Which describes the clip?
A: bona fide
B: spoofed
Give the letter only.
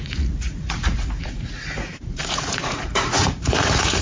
B